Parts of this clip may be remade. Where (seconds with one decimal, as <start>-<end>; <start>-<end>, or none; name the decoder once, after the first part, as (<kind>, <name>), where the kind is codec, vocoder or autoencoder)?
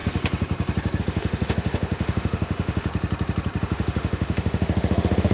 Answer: 1.0-2.9 (autoencoder, DAC-VAE); 3.6-5.3